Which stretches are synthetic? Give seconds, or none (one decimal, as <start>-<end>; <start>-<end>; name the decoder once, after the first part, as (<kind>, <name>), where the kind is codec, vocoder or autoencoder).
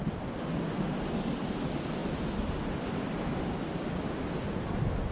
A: none